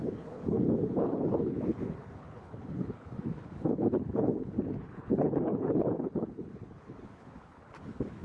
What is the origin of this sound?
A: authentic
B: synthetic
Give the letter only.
B